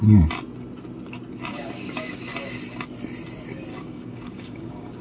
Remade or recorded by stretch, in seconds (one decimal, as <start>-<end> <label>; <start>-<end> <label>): 0.0-1.5 recorded; 1.5-2.2 remade; 2.2-3.7 recorded; 3.7-5.0 remade